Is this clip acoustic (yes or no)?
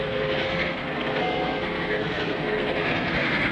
no